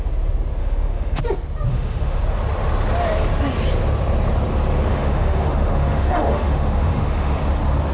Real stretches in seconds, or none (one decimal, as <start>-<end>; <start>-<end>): 0.0-0.6; 1.2-1.7; 2.2-4.9; 7.4-7.9